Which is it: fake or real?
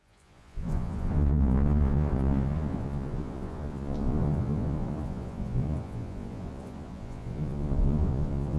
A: fake